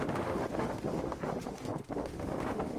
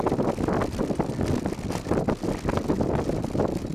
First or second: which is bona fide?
second